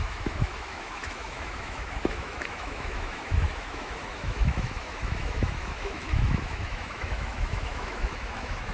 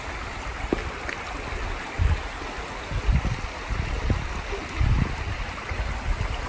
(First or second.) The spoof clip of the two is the first